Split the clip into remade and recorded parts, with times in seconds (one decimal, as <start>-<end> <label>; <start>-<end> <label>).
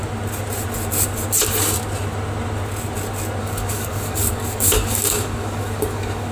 0.0-3.4 recorded; 3.4-6.3 remade